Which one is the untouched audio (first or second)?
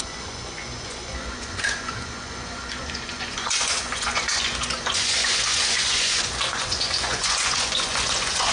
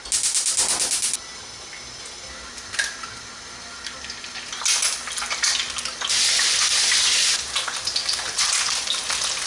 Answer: second